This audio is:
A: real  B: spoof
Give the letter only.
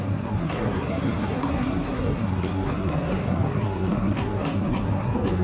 B